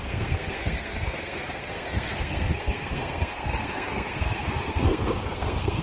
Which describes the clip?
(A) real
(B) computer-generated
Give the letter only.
B